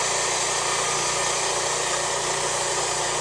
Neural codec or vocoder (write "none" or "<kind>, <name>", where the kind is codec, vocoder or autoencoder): none